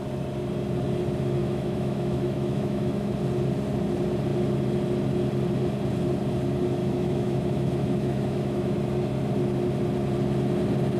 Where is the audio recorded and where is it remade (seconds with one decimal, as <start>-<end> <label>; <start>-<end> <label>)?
0.0-1.4 recorded; 1.4-3.1 remade; 3.1-6.8 recorded; 6.8-8.8 remade; 8.8-11.0 recorded